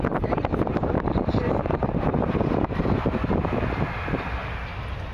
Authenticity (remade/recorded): recorded